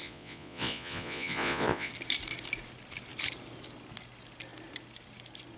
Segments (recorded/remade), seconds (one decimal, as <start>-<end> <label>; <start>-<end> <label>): 0.0-1.9 remade; 1.9-5.6 recorded